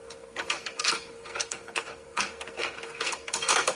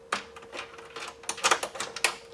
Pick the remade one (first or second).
first